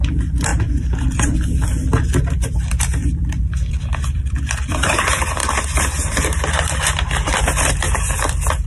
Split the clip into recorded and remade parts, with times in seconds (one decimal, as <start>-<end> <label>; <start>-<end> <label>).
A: 0.0-0.5 remade; 0.5-3.7 recorded; 3.7-5.4 remade; 5.4-6.1 recorded; 6.1-8.7 remade